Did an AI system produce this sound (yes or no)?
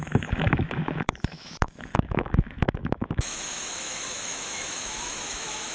yes